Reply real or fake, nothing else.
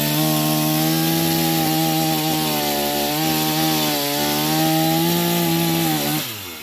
real